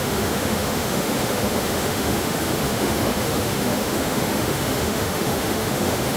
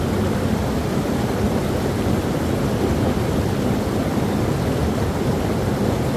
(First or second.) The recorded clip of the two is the second